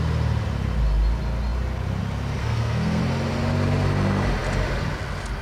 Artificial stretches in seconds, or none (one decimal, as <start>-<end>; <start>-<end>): 2.4-3.0

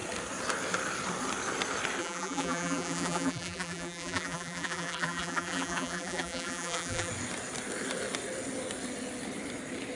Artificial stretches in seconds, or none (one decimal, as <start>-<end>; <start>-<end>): 2.0-7.1

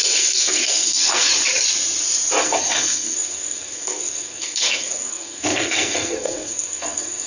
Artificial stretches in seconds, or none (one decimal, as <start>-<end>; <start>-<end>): 0.0-1.3; 2.4-7.3